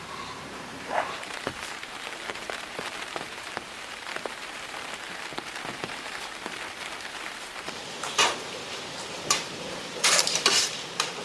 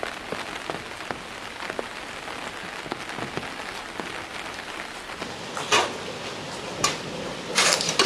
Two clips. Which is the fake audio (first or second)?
first